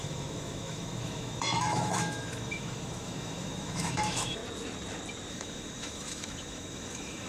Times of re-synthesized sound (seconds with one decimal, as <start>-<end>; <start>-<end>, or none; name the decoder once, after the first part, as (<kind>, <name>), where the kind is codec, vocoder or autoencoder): 0.0-4.4 (autoencoder, DAC-VAE); 5.3-7.3